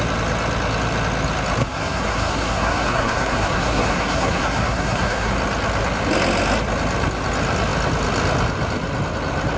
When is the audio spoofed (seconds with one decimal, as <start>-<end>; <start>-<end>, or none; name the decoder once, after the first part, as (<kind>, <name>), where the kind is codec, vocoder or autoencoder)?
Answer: 1.6-5.3 (codec, SNAC)

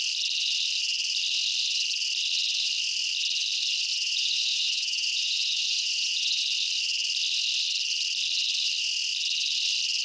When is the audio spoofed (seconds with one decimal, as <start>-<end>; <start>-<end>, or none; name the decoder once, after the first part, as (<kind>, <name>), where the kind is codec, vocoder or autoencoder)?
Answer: 3.9-6.4 (vocoder, Vocos)

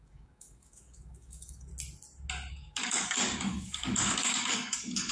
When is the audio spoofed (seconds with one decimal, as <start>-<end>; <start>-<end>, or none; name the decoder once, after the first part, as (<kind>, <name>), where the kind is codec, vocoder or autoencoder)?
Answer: 0.0-1.7 (codec, DAC); 2.5-5.1

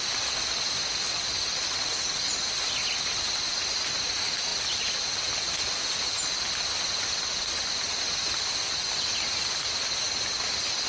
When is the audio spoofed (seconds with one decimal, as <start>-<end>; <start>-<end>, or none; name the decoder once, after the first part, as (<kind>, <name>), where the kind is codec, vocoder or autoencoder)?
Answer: none

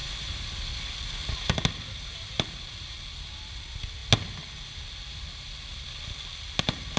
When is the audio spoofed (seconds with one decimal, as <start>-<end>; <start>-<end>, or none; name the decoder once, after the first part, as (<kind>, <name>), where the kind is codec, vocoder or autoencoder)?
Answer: none